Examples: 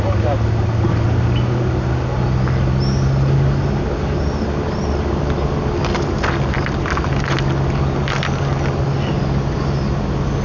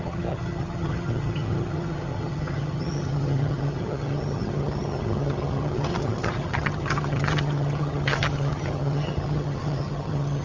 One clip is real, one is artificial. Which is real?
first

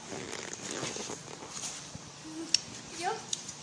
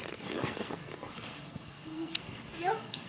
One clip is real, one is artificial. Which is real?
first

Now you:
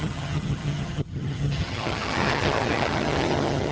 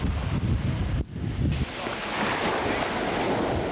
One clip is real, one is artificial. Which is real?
second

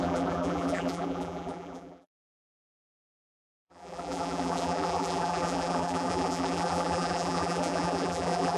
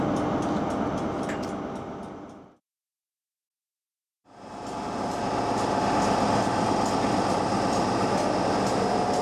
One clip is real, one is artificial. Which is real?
second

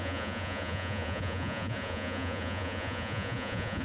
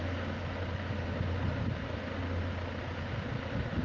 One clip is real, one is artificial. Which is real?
second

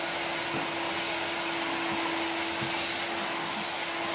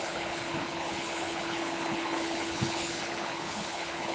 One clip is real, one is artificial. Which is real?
first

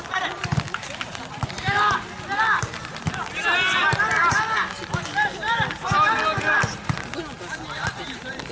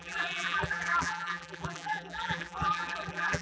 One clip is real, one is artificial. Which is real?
first